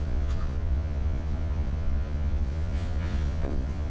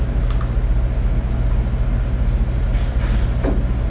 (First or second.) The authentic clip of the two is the second